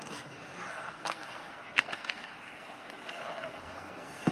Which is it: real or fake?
fake